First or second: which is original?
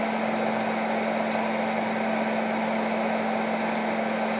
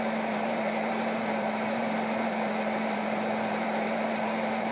first